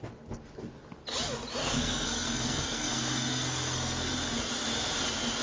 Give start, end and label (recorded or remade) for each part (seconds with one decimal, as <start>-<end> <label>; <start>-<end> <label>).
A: 0.0-1.6 recorded; 1.6-4.1 remade; 4.1-5.4 recorded